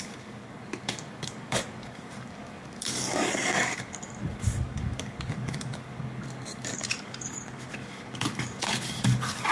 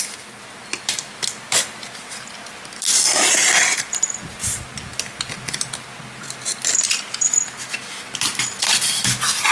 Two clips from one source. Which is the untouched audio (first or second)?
second